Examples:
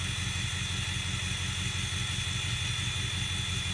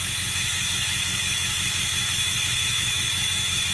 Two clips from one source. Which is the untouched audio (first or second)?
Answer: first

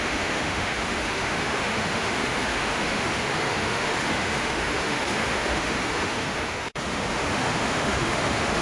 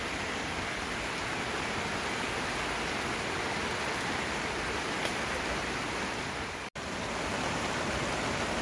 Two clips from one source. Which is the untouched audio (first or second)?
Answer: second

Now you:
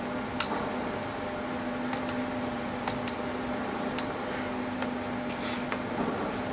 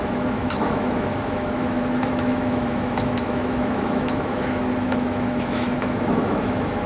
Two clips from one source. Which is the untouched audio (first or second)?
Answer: first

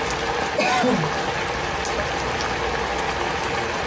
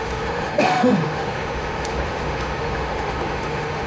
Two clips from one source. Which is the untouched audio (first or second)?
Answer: first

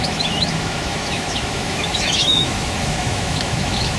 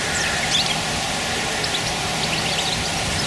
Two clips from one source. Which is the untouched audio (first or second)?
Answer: second